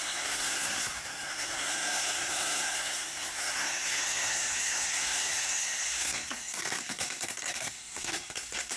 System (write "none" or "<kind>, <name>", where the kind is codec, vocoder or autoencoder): codec, SNAC